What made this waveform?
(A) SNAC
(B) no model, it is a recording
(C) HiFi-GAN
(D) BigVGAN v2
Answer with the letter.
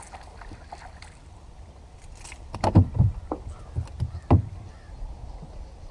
B